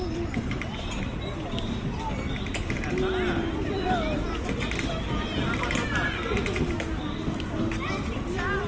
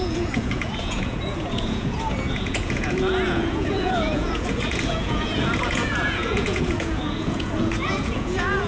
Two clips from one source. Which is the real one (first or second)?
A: first